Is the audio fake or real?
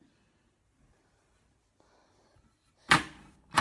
real